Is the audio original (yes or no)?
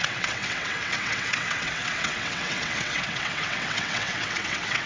no